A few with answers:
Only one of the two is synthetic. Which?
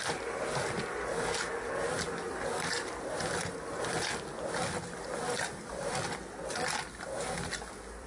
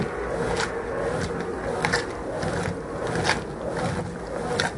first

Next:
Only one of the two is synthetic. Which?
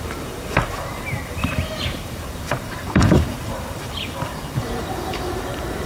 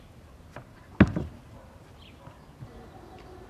first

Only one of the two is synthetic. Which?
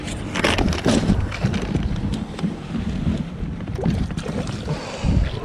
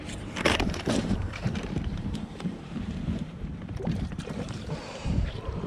second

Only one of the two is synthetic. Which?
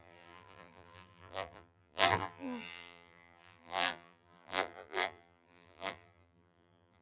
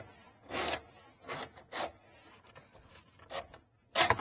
first